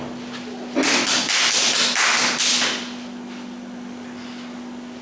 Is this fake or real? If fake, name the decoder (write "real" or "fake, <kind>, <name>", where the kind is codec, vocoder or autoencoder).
real